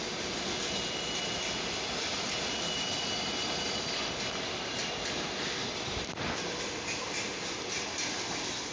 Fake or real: real